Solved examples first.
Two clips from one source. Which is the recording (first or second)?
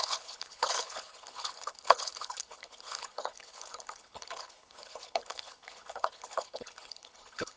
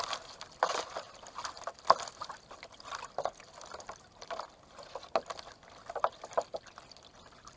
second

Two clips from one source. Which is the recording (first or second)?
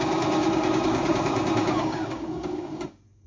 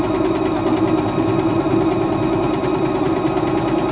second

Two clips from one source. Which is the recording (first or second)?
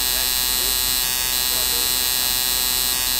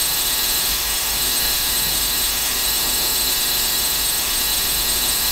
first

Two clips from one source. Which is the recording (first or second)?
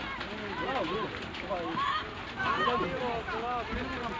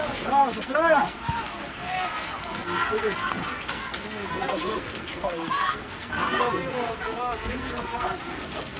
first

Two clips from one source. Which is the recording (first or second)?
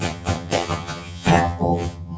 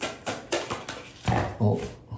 second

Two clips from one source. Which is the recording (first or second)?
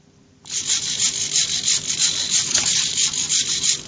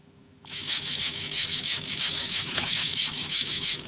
first